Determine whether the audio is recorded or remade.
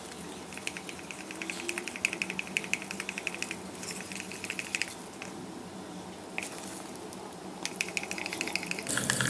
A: recorded